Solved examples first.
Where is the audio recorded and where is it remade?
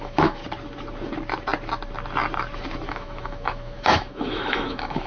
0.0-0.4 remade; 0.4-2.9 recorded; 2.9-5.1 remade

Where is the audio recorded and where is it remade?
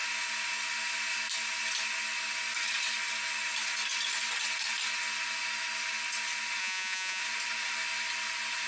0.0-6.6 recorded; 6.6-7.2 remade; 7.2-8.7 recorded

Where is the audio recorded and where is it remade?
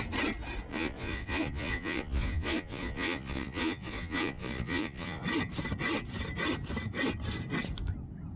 0.0-0.7 recorded; 0.7-5.2 remade; 5.2-8.4 recorded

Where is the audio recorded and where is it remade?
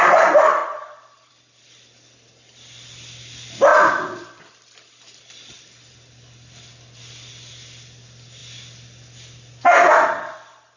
0.0-10.8 recorded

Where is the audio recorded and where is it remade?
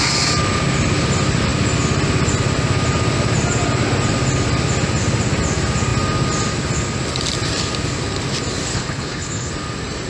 0.0-8.7 recorded; 8.7-9.5 remade; 9.5-10.1 recorded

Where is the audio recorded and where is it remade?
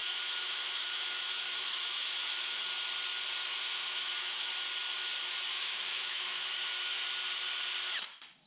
0.0-2.6 remade; 2.6-3.5 recorded; 3.5-4.5 remade; 4.5-5.5 recorded; 5.5-7.0 remade; 7.0-8.5 recorded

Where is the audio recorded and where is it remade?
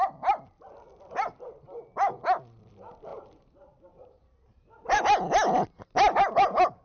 0.0-3.1 recorded; 3.1-5.0 remade; 5.0-6.8 recorded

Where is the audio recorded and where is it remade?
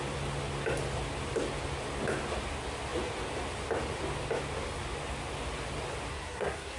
0.0-6.1 recorded; 6.1-6.8 remade